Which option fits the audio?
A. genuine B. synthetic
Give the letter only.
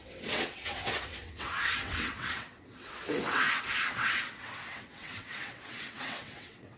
B